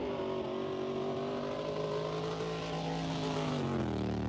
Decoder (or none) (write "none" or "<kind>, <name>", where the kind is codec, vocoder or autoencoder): none